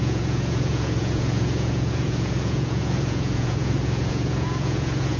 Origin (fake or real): fake